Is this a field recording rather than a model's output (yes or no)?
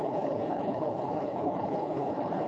no